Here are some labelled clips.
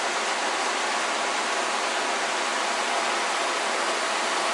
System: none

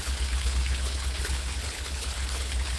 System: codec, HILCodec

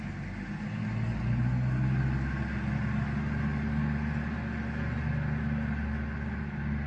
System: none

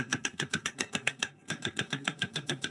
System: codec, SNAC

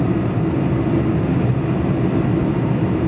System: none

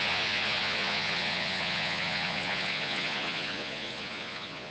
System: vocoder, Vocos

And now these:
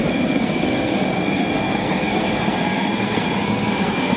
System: codec, SNAC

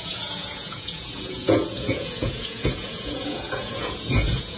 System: vocoder, Vocos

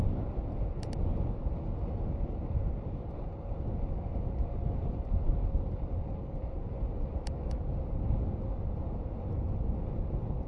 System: none